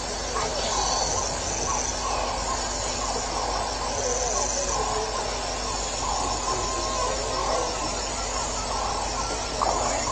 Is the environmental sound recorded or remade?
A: recorded